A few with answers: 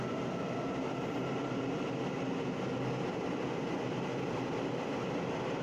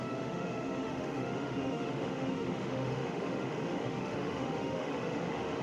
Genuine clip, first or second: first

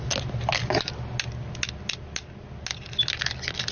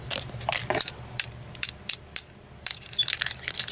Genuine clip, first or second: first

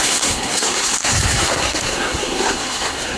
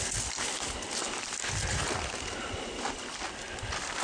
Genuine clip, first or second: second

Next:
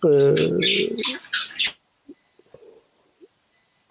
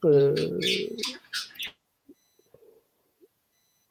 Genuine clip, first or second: first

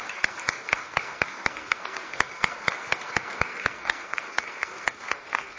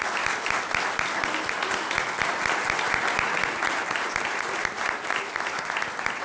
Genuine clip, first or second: second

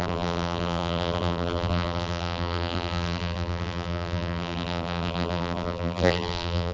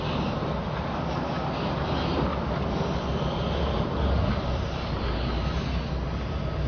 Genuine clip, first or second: second